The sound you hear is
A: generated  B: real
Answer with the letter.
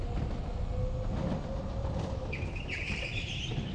B